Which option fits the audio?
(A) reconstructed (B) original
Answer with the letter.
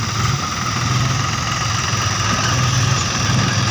B